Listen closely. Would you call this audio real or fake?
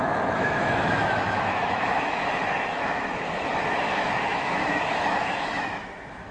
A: fake